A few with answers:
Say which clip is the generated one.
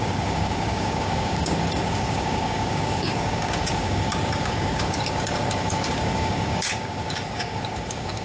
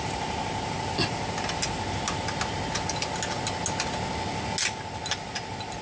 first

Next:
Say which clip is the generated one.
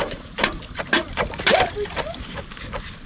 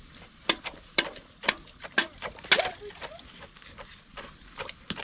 first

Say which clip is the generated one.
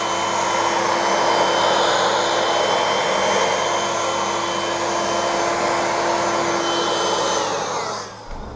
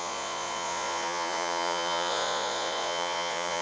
second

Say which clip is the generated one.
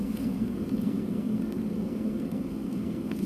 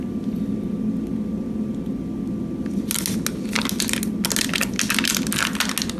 first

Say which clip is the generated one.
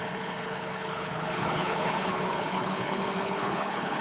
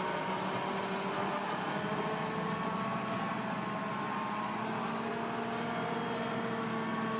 first